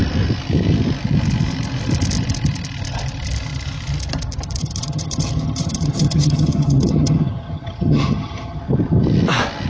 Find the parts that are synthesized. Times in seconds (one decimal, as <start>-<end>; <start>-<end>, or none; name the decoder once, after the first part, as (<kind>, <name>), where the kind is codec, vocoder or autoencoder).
4.6-8.6 (vocoder, HiFi-GAN)